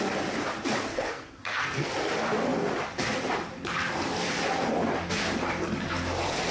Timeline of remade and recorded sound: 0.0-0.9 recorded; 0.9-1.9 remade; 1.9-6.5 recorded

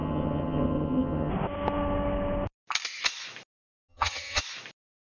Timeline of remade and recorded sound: 0.0-1.3 remade; 1.3-3.9 recorded; 3.9-4.4 remade; 4.4-5.1 recorded

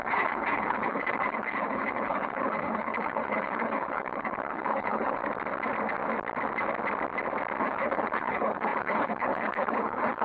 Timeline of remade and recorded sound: 0.0-5.2 remade; 5.2-7.6 recorded; 7.6-10.2 remade

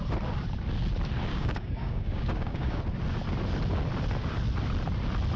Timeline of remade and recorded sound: 0.0-1.3 recorded; 1.3-2.8 remade; 2.8-5.4 recorded

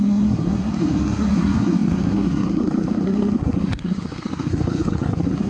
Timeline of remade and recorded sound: 0.0-5.5 remade

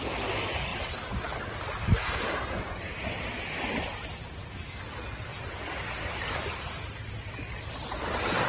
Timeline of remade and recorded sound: 0.0-0.7 recorded; 0.7-2.1 remade; 2.1-5.3 recorded; 5.3-7.6 remade; 7.6-8.5 recorded